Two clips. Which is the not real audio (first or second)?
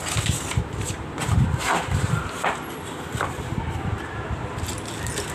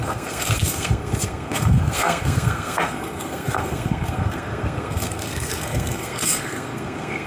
second